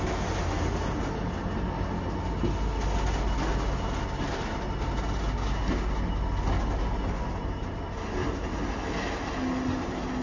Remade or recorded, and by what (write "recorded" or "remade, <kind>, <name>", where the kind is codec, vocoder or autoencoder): recorded